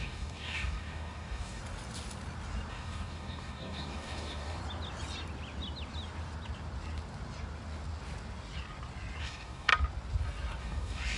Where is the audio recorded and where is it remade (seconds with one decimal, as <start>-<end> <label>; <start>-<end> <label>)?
0.0-1.6 remade; 1.6-2.7 recorded; 2.7-4.6 remade; 4.6-9.2 recorded; 9.2-9.7 remade; 9.7-10.6 recorded; 10.6-11.2 remade